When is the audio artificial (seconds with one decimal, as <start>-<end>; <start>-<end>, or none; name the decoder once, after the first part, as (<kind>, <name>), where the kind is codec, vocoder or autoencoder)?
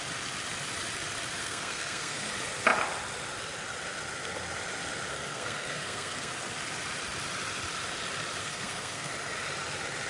1.4-2.3 (codec, SNAC); 5.1-6.3; 8.4-9.1